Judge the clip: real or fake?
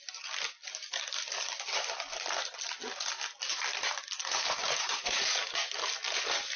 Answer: real